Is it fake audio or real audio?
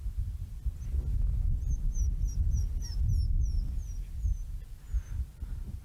real